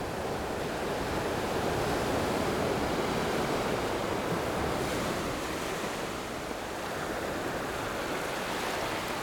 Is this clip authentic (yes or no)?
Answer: yes